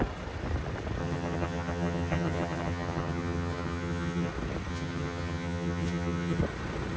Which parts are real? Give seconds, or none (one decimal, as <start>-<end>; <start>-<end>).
0.0-1.0; 4.3-4.7; 6.4-7.0